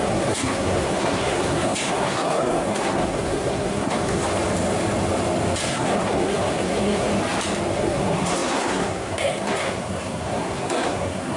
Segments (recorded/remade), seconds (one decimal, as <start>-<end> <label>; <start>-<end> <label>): 0.0-4.2 remade; 4.2-5.6 recorded; 5.6-7.1 remade; 7.1-7.7 recorded; 7.7-11.4 remade